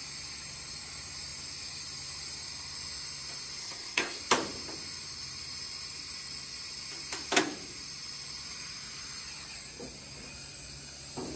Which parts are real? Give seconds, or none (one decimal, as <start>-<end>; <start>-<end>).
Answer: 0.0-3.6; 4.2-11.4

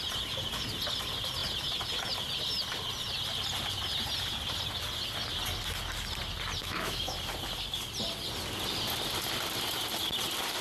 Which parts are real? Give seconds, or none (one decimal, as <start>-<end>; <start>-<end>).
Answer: 0.0-6.6; 7.2-10.6

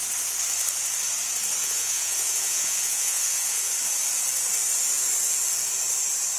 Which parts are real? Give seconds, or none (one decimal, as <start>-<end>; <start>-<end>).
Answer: 0.0-1.6; 3.7-6.4